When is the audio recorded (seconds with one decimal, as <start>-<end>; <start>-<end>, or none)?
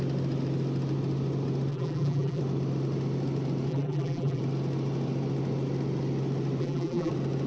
0.0-1.7; 2.4-3.7; 4.4-6.6; 7.1-7.5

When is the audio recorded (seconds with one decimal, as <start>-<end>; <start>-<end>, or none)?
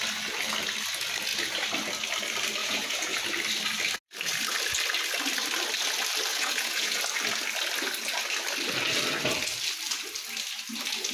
0.0-2.6; 3.2-6.3; 7.0-11.1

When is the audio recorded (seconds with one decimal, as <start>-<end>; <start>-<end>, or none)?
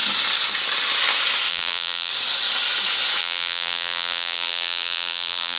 0.0-1.5; 2.1-3.2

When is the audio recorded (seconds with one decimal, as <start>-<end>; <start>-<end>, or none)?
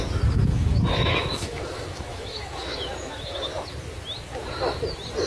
0.0-0.5; 3.5-5.3